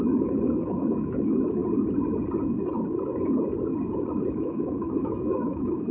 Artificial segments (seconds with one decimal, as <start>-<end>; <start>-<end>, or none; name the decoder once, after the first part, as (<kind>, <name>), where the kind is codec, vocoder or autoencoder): 0.0-1.6 (autoencoder, DAC-VAE); 4.3-5.9